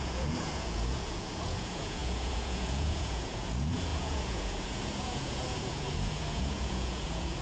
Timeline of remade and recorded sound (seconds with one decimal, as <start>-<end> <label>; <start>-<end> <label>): 0.0-7.4 remade